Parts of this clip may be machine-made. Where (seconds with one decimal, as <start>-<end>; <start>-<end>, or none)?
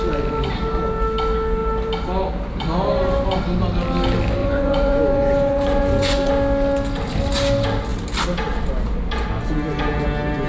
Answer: 4.4-6.3